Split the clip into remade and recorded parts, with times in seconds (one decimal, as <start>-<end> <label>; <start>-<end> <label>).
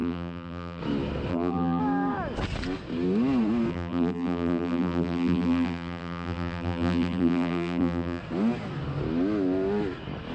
0.0-0.8 remade; 0.8-1.3 recorded; 1.3-1.8 remade; 1.8-3.7 recorded; 3.7-8.2 remade; 8.2-10.3 recorded